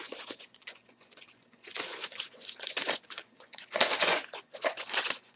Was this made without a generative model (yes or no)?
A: no